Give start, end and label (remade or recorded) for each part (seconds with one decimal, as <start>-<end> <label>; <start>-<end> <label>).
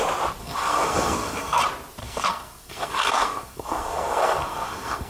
0.0-0.4 recorded; 0.4-1.6 remade; 1.6-2.0 recorded; 2.0-5.1 remade